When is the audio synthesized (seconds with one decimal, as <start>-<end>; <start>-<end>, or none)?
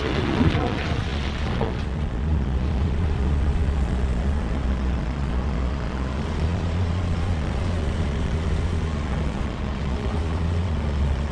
0.0-11.3